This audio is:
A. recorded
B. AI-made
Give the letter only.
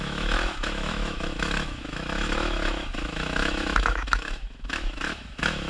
B